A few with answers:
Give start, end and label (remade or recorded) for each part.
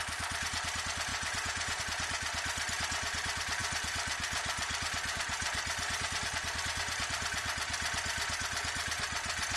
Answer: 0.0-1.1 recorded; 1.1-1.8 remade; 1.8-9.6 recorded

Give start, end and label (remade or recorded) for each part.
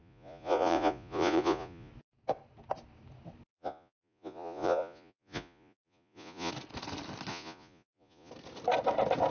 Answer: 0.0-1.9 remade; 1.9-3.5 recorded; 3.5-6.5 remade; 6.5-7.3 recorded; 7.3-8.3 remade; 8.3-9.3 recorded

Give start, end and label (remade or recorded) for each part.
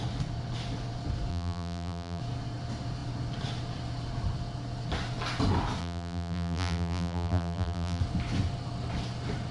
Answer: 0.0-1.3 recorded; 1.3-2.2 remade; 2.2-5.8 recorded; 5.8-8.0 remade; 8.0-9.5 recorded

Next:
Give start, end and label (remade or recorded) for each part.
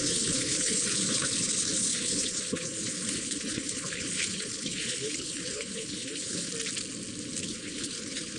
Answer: 0.0-6.5 remade; 6.5-7.4 recorded; 7.4-8.4 remade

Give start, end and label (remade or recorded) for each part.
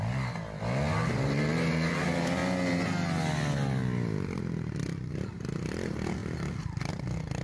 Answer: 0.0-7.4 recorded